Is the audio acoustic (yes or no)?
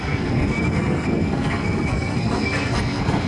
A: no